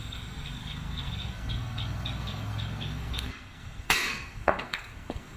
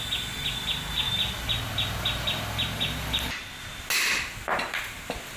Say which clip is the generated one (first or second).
first